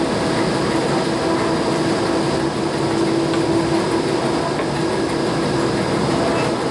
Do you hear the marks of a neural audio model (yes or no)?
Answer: no